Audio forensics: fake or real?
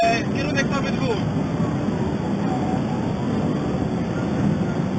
real